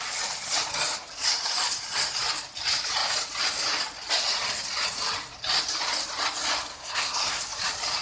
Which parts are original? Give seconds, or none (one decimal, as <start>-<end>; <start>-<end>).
0.0-6.7; 7.4-8.0